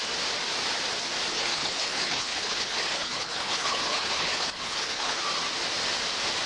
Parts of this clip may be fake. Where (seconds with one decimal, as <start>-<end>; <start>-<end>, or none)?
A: 1.3-5.2